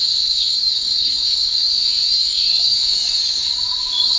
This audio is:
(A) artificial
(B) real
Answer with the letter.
A